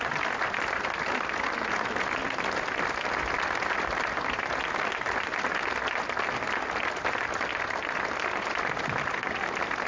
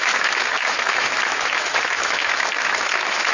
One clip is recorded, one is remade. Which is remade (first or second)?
second